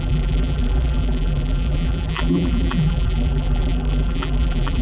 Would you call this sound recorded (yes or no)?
no